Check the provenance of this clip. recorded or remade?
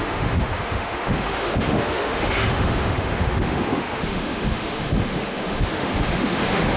remade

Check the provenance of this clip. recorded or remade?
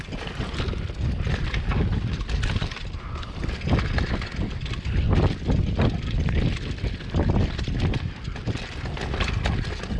recorded